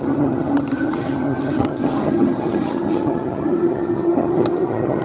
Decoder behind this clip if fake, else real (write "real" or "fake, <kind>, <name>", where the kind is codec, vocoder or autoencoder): fake, vocoder, HiFi-GAN